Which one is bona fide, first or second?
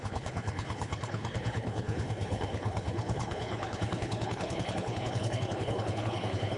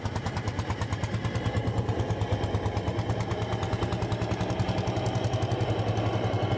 second